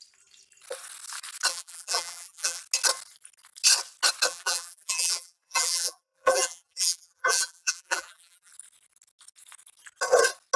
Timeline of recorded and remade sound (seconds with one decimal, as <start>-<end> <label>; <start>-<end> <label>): 0.0-1.5 recorded; 1.5-2.6 remade; 2.6-4.3 recorded; 4.3-8.5 remade; 8.5-10.6 recorded